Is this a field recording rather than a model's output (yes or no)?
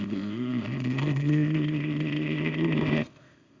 no